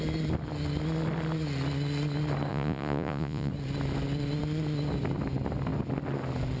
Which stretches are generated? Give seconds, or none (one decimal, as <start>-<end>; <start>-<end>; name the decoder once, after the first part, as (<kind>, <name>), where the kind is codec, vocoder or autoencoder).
2.5-3.5 (vocoder, Vocos)

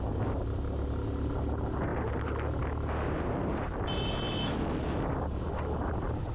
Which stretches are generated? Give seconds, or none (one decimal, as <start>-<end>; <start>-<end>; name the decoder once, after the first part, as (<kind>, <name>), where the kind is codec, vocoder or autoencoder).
none

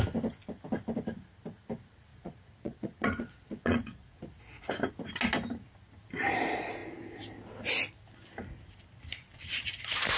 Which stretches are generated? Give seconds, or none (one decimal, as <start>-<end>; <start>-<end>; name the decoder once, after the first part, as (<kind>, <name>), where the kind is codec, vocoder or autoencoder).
2.1-4.7 (vocoder, Vocos)

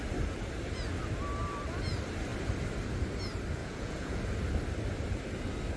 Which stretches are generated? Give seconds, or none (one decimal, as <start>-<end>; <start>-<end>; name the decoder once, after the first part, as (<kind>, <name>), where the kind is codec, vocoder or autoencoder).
3.6-4.2 (vocoder, Vocos)

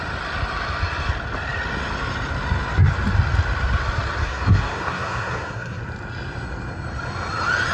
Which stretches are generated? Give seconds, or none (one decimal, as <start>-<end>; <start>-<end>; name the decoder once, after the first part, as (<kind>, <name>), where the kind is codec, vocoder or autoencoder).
4.2-5.8 (codec, SNAC)

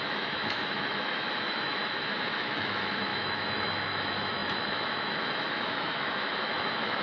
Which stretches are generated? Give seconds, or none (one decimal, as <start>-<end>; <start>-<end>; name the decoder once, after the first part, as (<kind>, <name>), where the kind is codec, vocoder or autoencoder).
0.0-7.0 (autoencoder, DAC-VAE)

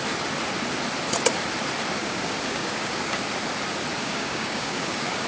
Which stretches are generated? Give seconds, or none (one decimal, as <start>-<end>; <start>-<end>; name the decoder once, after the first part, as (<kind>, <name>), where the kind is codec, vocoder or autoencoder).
2.0-3.2 (codec, DAC); 4.0-5.3

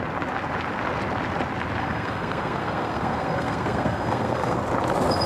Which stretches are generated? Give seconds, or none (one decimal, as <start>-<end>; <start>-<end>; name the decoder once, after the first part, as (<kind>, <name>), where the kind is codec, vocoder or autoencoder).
1.8-4.6 (codec, SNAC)